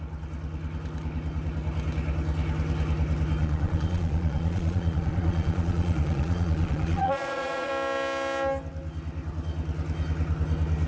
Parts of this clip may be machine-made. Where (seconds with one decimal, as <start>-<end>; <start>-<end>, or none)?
3.4-7.7